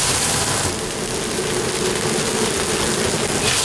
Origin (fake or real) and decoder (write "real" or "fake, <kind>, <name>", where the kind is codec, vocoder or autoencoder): real